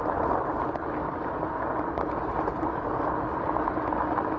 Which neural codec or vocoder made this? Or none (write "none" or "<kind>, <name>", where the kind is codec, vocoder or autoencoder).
none